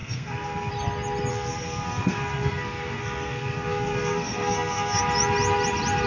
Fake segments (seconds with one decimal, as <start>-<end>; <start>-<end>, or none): 0.0-0.7; 1.3-5.0